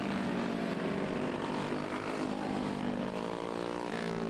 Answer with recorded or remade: recorded